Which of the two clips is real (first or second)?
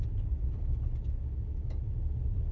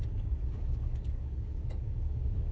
first